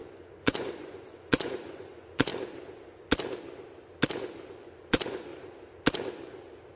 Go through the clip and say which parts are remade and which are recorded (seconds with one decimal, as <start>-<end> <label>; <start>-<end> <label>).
0.0-2.3 remade; 2.3-4.6 recorded; 4.6-5.3 remade; 5.3-6.8 recorded